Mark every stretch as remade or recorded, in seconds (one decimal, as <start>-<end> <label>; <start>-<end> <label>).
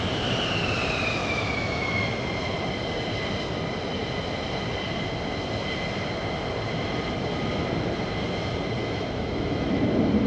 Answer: 0.0-1.2 recorded; 1.2-2.0 remade; 2.0-8.8 recorded; 8.8-9.8 remade; 9.8-10.3 recorded